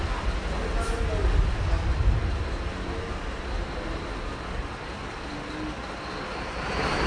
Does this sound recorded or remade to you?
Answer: recorded